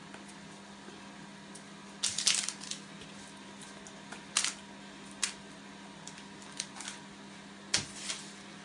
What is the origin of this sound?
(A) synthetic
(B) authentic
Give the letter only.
B